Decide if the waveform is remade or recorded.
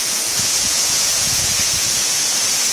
remade